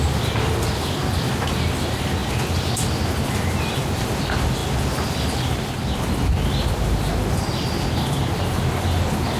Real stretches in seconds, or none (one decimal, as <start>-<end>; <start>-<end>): 0.0-9.4